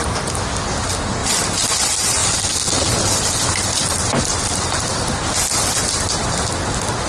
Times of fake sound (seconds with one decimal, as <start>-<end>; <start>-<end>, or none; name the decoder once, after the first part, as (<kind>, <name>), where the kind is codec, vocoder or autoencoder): 1.2-1.7 (vocoder, BigVGAN v2)